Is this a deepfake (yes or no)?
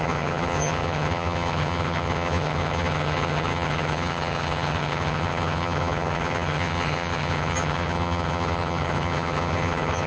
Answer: yes